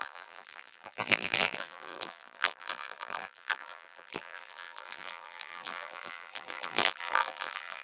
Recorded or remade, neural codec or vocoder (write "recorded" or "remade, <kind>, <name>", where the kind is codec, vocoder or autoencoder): remade, vocoder, BigVGAN v2